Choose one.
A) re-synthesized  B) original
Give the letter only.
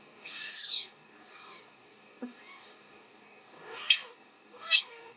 A